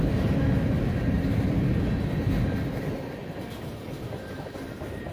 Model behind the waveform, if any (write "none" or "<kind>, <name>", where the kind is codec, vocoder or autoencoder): vocoder, BigVGAN v2